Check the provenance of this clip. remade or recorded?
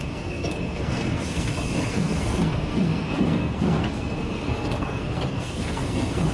remade